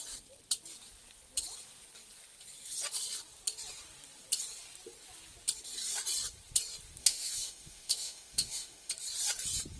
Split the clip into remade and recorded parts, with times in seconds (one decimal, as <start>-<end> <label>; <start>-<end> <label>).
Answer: 0.0-7.0 recorded; 7.0-8.9 remade; 8.9-9.8 recorded